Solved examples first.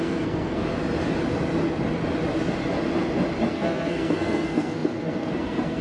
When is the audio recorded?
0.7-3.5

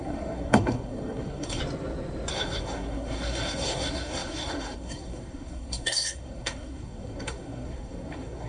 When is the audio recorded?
1.6-2.3

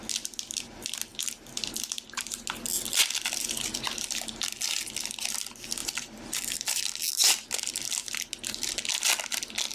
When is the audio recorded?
0.0-9.7

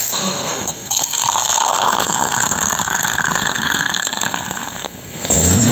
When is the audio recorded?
none

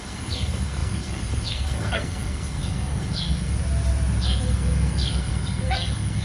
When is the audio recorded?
3.6-4.2